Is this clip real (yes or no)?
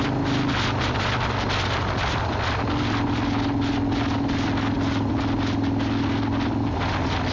yes